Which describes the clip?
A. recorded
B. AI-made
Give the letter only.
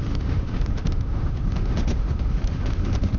B